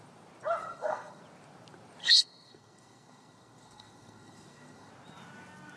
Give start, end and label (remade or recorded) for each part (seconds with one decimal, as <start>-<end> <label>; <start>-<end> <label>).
0.0-0.6 recorded; 0.6-1.2 remade; 1.2-2.0 recorded; 2.0-4.9 remade; 4.9-5.8 recorded